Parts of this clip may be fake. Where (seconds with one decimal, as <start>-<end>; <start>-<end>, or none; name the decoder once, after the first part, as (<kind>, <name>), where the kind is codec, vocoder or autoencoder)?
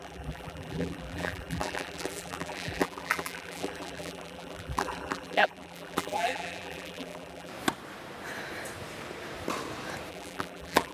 0.0-7.5 (vocoder, BigVGAN v2); 10.1-10.9